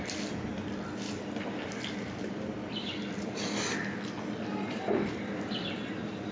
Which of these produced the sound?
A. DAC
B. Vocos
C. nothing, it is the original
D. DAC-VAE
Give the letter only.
C